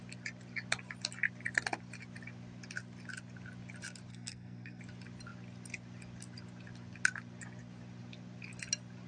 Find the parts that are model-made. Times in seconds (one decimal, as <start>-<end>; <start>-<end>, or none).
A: 4.1-4.8